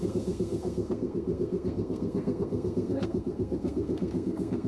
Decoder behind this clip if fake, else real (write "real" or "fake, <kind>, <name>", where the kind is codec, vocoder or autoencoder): fake, codec, SNAC